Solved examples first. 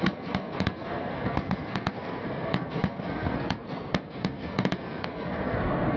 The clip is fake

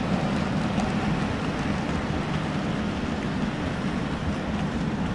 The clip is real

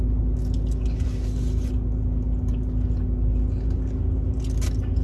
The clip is real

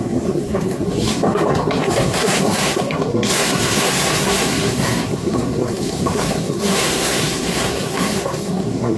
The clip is fake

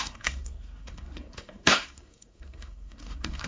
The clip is fake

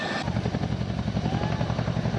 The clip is real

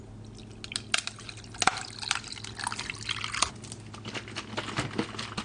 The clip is real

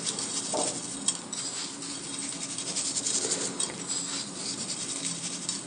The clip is real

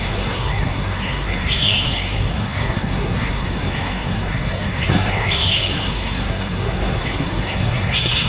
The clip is fake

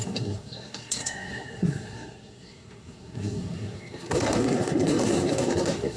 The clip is fake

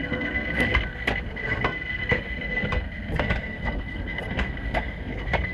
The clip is fake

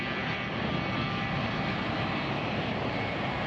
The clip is real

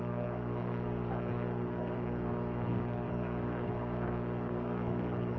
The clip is fake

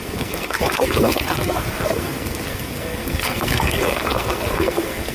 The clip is fake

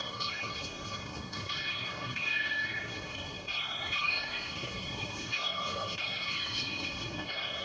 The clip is fake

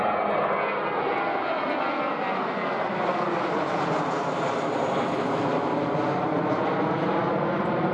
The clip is real